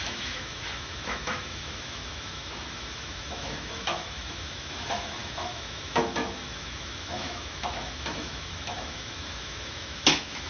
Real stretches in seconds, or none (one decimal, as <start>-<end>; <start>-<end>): none